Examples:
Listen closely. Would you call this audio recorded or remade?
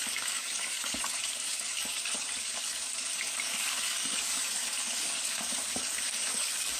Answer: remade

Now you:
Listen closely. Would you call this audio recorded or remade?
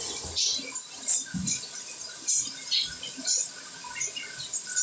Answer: recorded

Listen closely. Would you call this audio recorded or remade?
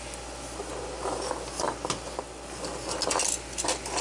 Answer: recorded